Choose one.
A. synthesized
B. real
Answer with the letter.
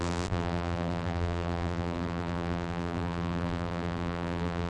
A